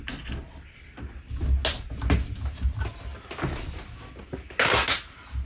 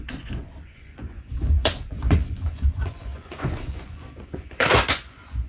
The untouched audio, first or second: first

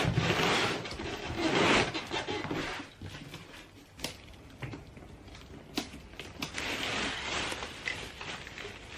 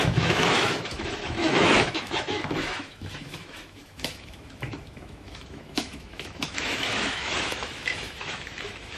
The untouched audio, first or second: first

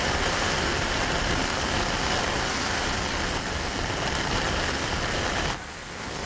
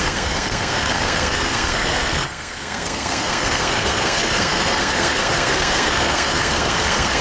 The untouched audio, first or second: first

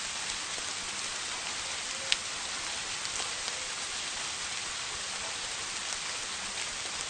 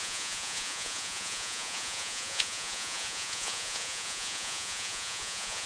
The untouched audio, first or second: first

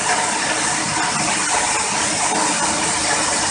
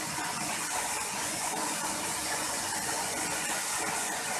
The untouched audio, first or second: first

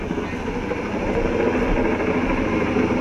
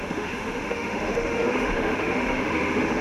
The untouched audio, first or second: first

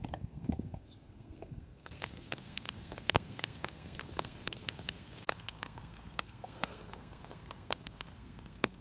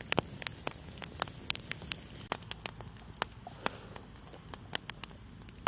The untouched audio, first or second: second